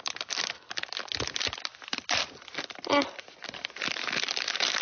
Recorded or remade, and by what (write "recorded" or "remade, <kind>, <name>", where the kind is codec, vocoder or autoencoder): recorded